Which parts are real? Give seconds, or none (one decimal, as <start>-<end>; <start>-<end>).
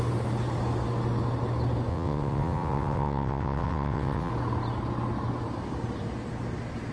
0.0-1.9; 4.3-6.9